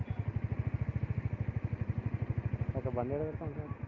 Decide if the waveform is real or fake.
real